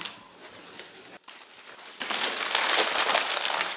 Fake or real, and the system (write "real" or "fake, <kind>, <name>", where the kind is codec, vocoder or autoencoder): real